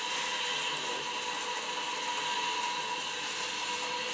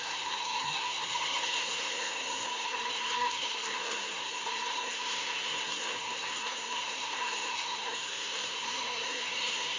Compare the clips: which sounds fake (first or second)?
second